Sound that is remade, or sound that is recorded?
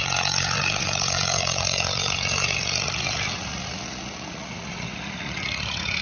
remade